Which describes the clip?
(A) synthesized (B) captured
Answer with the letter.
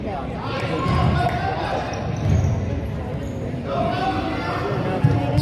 B